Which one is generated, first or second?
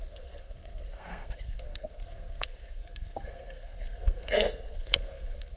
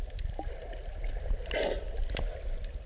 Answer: first